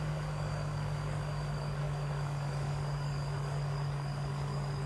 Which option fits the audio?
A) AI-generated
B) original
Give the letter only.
A